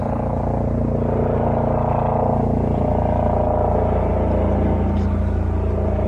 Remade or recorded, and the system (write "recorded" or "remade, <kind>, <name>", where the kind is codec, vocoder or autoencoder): recorded